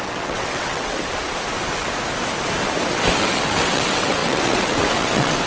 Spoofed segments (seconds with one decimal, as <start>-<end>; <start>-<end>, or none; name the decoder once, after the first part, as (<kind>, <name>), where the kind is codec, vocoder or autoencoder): 0.0-1.0 (vocoder, WaveNeXt); 2.9-5.5